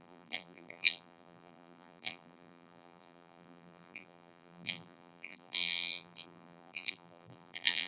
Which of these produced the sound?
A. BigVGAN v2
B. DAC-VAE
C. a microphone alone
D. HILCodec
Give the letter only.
A